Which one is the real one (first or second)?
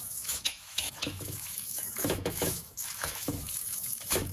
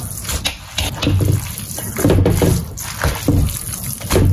second